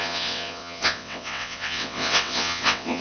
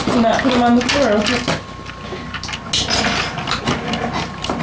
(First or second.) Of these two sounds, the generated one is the first